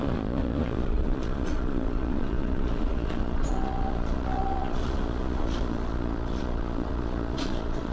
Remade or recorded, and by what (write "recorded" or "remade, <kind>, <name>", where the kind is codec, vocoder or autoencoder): remade, vocoder, Vocos